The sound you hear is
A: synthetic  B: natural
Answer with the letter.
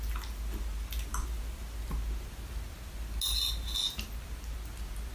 B